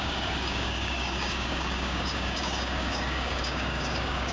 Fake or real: fake